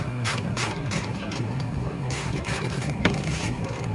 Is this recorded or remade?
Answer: remade